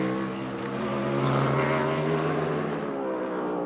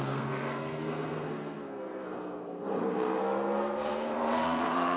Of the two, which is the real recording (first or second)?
first